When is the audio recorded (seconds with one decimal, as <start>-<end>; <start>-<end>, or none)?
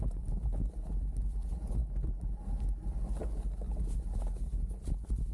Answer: 0.0-5.3